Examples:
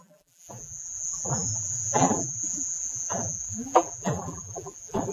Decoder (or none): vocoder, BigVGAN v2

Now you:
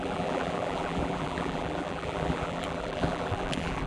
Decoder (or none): vocoder, BigVGAN v2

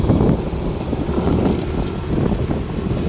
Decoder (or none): none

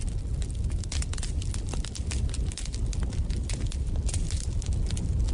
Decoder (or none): none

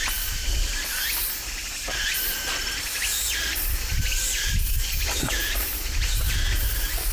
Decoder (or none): vocoder, BigVGAN v2